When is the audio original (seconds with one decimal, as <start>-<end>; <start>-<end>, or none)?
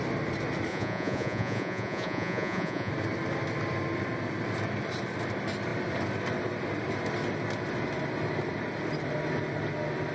0.0-0.7; 2.9-10.1